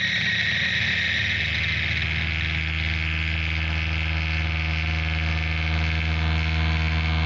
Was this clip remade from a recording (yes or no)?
no